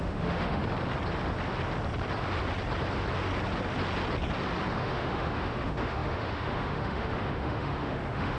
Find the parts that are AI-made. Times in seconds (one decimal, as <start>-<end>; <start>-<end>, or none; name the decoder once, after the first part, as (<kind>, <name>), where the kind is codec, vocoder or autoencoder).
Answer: 0.0-0.6 (autoencoder, DAC-VAE); 4.8-8.4